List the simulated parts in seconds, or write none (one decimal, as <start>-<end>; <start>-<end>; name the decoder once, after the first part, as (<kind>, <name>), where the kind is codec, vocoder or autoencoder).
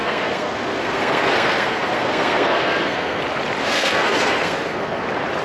0.0-3.2 (codec, SNAC); 3.6-5.0